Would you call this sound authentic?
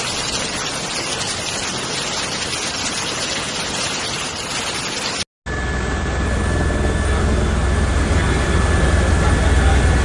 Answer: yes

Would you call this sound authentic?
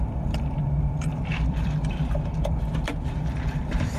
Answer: no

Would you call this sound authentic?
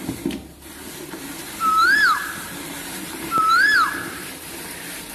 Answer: no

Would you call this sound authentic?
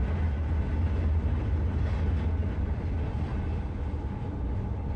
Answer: yes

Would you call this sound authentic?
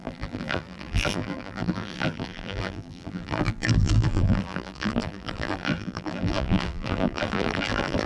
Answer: no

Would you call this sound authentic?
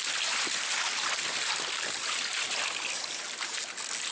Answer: yes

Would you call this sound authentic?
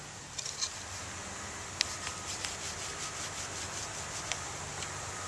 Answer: no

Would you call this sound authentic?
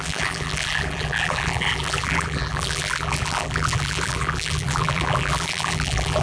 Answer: no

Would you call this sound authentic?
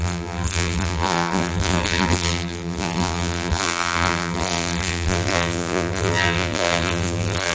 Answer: no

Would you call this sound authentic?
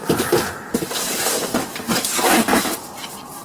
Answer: yes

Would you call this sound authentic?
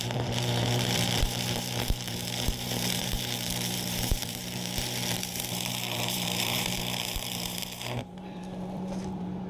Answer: no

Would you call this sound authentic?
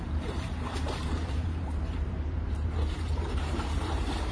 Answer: no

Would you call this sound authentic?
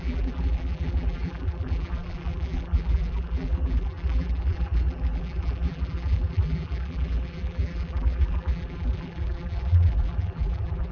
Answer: no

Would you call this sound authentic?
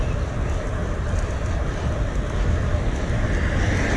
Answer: no